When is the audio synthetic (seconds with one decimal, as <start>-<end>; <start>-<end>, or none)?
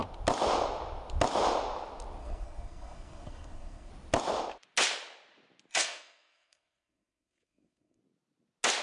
2.2-3.9; 5.7-8.0